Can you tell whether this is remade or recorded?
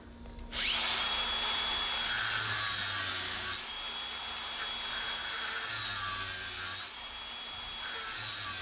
recorded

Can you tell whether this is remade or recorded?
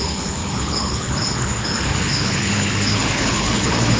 remade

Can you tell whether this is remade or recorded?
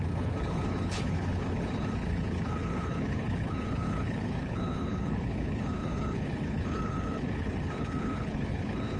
remade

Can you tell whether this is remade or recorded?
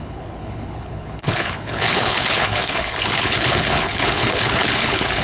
remade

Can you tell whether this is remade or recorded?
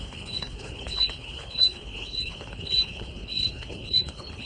remade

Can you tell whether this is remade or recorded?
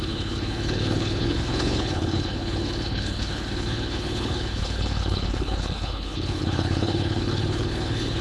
remade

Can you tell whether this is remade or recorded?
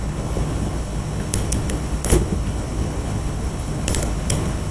remade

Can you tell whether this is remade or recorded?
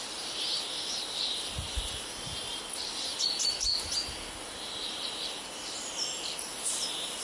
recorded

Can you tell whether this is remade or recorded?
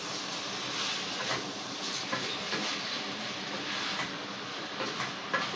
recorded